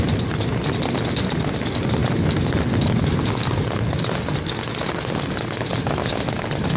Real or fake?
real